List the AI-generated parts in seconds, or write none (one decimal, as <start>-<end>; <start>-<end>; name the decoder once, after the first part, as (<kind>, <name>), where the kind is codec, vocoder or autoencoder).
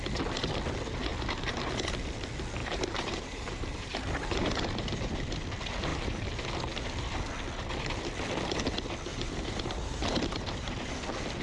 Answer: 2.6-4.6 (vocoder, BigVGAN v2); 9.1-10.9